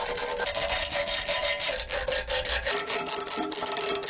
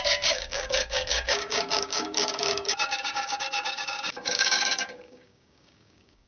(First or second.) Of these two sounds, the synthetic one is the second